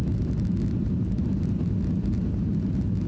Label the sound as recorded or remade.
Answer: recorded